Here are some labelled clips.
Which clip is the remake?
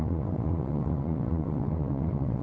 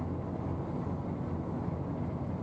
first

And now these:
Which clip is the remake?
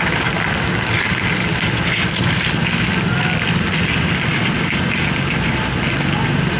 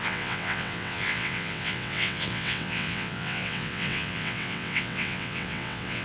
second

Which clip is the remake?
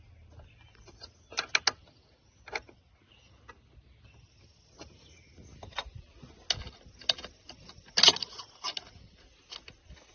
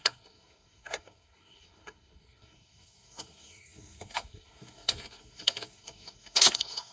second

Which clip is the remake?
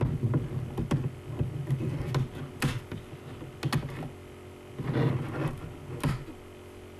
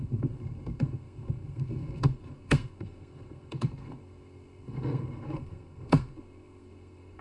second